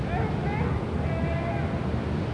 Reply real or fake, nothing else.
real